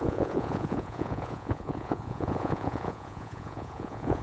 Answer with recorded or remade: remade